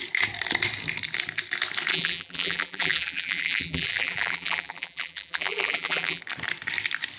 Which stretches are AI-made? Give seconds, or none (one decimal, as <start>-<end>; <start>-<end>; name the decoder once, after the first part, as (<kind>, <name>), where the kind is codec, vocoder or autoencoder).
1.9-6.2 (vocoder, BigVGAN v2)